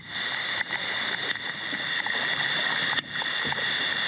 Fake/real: real